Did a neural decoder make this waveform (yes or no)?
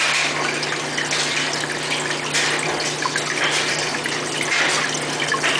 no